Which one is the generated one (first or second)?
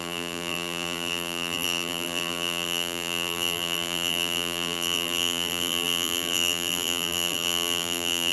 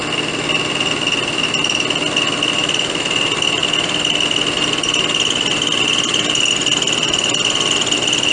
first